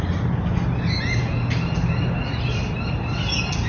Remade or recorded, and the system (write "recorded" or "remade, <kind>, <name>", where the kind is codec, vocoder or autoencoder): recorded